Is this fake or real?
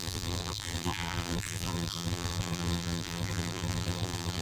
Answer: fake